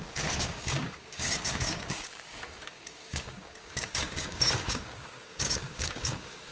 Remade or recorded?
remade